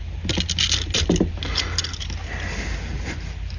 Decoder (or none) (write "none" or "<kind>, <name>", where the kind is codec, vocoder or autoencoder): none